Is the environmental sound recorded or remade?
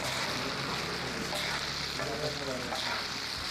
recorded